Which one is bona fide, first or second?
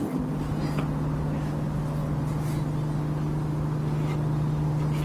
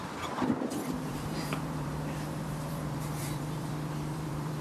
first